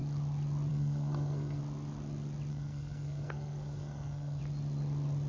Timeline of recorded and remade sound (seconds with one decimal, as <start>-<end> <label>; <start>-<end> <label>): 0.0-0.7 recorded; 0.7-1.6 remade; 1.6-2.5 recorded; 2.5-4.4 remade; 4.4-5.3 recorded

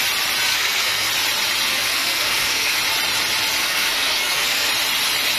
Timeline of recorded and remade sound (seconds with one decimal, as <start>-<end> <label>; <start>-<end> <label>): 0.0-0.5 recorded; 0.5-1.1 remade; 1.1-1.7 recorded; 1.7-2.8 remade; 2.8-3.6 recorded; 3.6-4.7 remade; 4.7-5.4 recorded

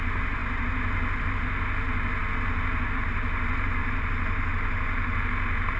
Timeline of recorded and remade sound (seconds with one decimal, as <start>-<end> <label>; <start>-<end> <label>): 0.0-3.8 recorded; 3.8-5.2 remade; 5.2-5.8 recorded